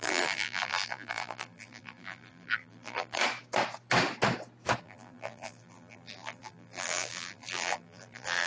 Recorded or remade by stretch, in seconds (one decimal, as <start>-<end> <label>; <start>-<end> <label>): 0.0-3.2 remade; 3.2-4.8 recorded; 4.8-8.5 remade